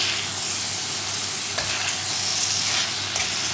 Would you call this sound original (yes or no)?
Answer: yes